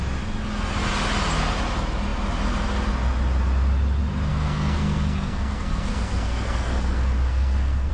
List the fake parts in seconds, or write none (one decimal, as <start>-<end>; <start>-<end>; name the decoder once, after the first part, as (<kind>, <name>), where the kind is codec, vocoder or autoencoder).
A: 4.3-7.9 (codec, SNAC)